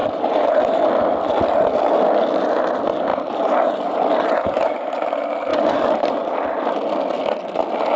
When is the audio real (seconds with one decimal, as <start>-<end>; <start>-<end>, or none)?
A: 0.8-3.1; 4.9-5.5; 6.3-8.0